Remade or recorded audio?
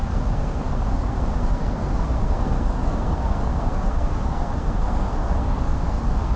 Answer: remade